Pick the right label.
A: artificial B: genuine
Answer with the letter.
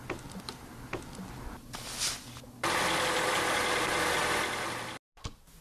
B